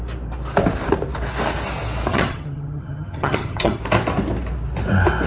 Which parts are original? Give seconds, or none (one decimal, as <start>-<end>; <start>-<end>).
0.0-2.1; 3.8-5.3